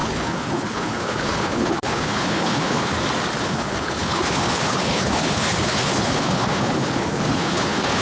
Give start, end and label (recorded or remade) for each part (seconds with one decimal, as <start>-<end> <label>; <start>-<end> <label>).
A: 0.0-2.9 remade; 2.9-3.4 recorded; 3.4-8.0 remade